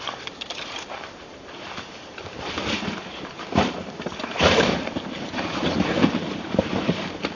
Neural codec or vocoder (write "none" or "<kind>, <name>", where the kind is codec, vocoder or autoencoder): vocoder, BigVGAN v2